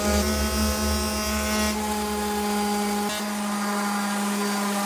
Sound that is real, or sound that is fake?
real